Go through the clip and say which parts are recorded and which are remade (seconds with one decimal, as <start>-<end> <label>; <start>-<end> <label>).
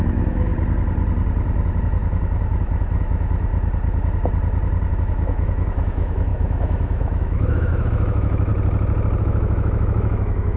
0.0-0.5 remade; 0.5-1.8 recorded; 1.8-3.5 remade; 3.5-4.9 recorded; 4.9-8.5 remade; 8.5-9.2 recorded; 9.2-10.6 remade